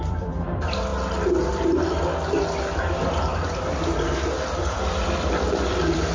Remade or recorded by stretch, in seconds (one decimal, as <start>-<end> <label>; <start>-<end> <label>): 0.0-0.9 remade; 0.9-4.6 recorded; 4.6-6.1 remade